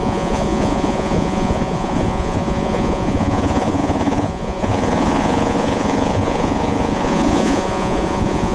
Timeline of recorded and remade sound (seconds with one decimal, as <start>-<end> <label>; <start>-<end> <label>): 0.0-8.5 remade